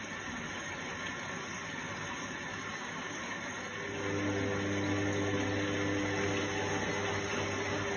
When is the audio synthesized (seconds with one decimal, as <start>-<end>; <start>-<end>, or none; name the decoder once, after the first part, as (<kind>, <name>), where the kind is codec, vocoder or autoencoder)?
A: 2.5-3.2 (codec, DAC)